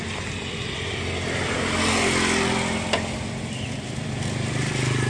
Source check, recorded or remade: recorded